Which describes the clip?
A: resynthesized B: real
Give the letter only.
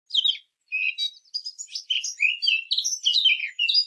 B